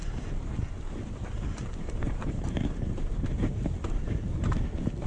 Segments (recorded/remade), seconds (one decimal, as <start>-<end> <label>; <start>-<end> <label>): 0.0-0.6 remade; 0.6-1.6 recorded; 1.6-4.3 remade; 4.3-5.1 recorded